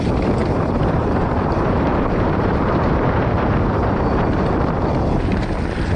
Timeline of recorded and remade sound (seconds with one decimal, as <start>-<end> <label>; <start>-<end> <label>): 0.0-0.4 recorded; 0.4-4.0 remade; 4.0-6.0 recorded